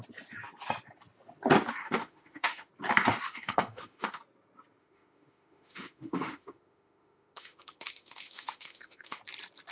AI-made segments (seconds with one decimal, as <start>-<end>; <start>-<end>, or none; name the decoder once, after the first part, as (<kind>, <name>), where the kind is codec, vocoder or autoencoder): 1.8-2.7 (autoencoder, DAC-VAE); 3.1-4.2; 4.8-9.2